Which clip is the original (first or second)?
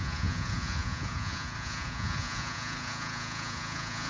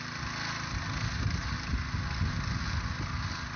second